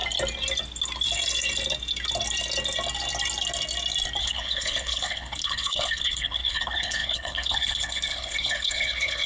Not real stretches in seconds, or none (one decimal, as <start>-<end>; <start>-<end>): 4.2-9.3